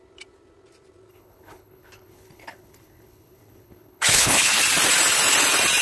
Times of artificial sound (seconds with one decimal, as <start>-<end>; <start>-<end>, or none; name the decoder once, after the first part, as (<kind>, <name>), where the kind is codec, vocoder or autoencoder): 1.1-4.6 (codec, HILCodec)